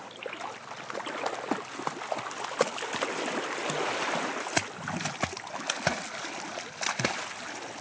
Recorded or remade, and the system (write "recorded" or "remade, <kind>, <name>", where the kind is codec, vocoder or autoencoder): recorded